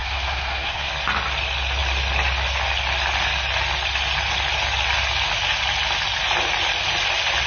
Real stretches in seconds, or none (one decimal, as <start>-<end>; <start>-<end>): 0.9-7.5

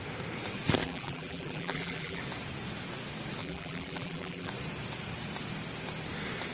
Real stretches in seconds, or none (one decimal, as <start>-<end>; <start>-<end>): 0.0-0.8; 2.2-3.4; 4.5-6.5

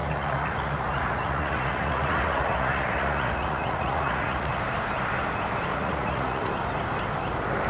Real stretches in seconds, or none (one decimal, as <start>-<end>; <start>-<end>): 4.6-5.7; 6.5-7.7

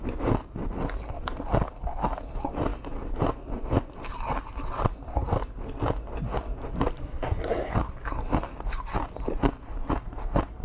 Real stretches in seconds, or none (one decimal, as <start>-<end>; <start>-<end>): 0.0-7.0; 7.7-10.6

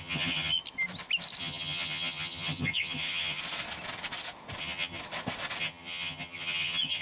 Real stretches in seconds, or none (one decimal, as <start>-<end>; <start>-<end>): 0.6-1.4; 3.4-4.6; 5.0-5.6

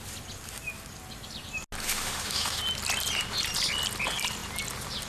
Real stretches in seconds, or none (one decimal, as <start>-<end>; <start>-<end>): 0.0-1.8; 2.6-5.1

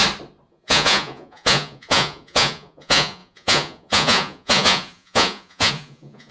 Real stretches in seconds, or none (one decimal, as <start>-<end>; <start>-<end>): 0.0-0.5